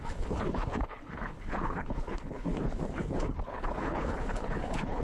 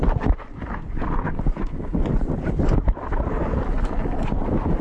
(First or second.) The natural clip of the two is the second